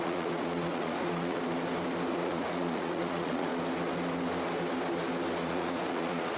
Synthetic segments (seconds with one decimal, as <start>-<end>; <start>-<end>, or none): 0.0-1.4; 2.1-3.5; 5.4-6.4